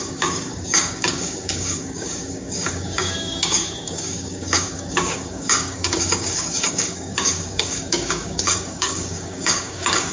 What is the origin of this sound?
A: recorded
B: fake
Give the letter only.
B